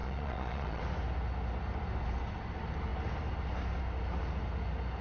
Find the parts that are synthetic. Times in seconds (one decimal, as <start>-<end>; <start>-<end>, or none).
0.0-0.8